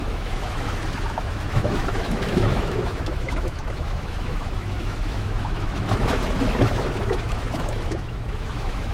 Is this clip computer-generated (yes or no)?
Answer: yes